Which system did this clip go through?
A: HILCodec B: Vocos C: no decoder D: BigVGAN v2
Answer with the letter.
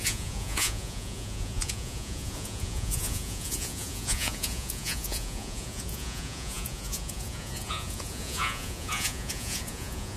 B